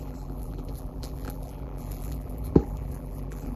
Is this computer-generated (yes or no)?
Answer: yes